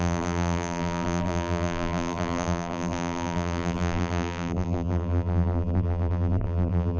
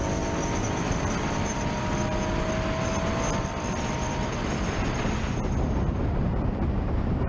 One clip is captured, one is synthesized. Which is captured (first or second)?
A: second